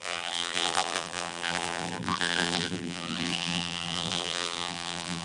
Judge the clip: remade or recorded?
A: remade